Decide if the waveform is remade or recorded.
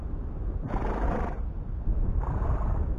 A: recorded